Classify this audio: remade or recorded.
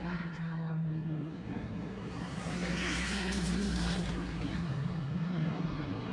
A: remade